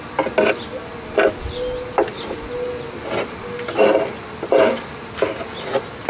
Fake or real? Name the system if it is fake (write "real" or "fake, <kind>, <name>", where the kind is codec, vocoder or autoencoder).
real